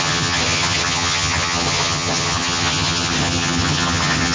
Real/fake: fake